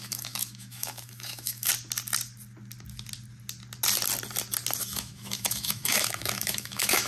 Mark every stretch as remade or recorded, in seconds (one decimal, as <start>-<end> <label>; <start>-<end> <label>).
0.0-1.7 remade; 1.7-4.8 recorded; 4.8-7.1 remade